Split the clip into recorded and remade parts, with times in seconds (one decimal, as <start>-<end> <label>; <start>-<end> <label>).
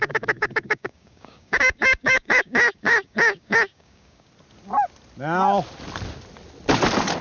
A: 0.0-4.3 remade; 4.3-7.2 recorded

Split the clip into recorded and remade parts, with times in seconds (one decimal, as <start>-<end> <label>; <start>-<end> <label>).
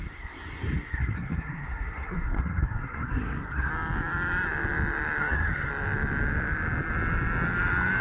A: 0.0-3.7 remade; 3.7-5.2 recorded; 5.2-5.7 remade; 5.7-8.0 recorded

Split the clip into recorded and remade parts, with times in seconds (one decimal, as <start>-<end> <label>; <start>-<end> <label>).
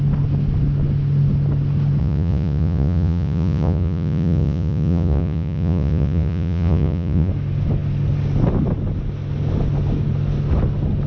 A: 0.0-2.0 recorded; 2.0-7.3 remade; 7.3-11.1 recorded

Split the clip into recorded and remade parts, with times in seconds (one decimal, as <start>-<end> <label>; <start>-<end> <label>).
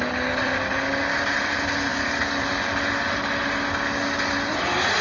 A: 0.0-5.0 recorded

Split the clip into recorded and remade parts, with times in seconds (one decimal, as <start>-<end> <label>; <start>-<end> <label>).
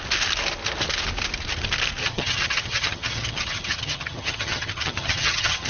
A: 0.0-2.0 recorded; 2.0-5.7 remade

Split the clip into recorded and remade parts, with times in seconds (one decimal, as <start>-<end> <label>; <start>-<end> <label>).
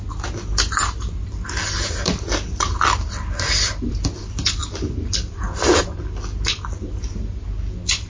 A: 0.0-8.1 recorded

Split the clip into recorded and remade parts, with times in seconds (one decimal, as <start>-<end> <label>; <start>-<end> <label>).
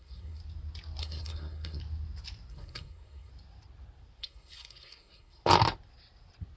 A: 0.0-0.4 remade; 0.4-1.0 recorded; 1.0-1.8 remade; 1.8-2.5 recorded; 2.5-3.3 remade; 3.3-4.2 recorded; 4.2-5.4 remade; 5.4-6.6 recorded